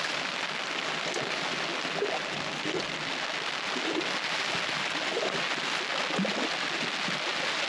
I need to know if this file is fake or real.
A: real